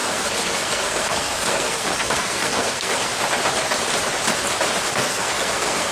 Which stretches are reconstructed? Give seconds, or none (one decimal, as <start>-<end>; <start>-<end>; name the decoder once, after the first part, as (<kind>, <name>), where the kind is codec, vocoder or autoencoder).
0.0-3.1 (codec, SNAC); 4.9-5.9